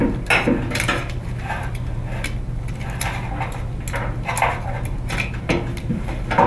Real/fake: real